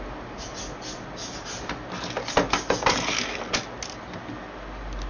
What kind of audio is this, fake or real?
real